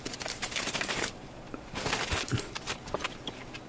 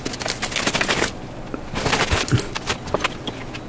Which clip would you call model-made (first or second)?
first